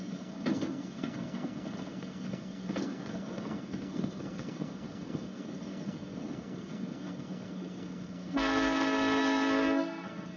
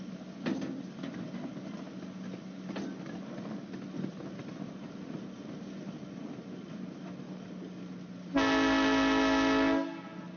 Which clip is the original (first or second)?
second